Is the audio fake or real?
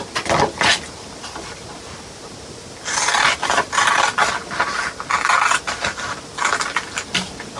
real